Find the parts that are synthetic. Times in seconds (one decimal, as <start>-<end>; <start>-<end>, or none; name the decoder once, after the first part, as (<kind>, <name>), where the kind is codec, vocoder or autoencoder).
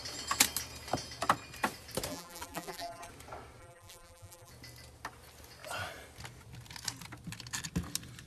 2.1-3.1 (vocoder, BigVGAN v2); 3.6-4.5